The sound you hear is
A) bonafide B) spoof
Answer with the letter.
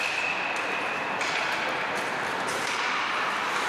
B